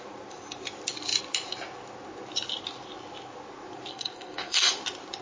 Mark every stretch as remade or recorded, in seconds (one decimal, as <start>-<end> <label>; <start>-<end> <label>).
0.0-3.9 recorded; 3.9-4.7 remade; 4.7-5.2 recorded